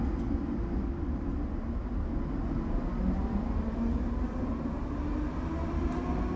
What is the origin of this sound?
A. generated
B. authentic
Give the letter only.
B